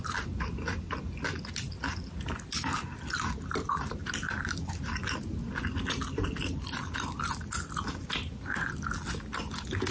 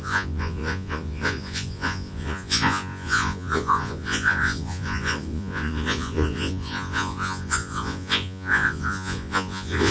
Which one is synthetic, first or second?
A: second